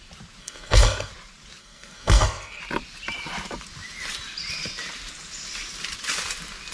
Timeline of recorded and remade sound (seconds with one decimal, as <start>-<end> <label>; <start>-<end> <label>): 0.0-0.4 recorded; 0.4-1.1 remade; 1.1-1.6 recorded; 1.6-2.6 remade; 2.6-6.7 recorded